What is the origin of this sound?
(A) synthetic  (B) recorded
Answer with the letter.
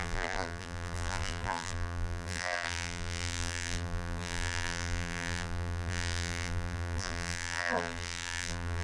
A